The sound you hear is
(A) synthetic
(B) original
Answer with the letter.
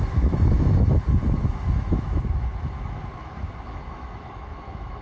A